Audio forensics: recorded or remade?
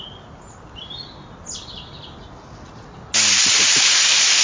recorded